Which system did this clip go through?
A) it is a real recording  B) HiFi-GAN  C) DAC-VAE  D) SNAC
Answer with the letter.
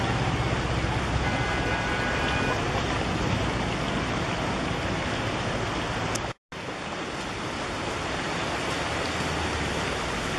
A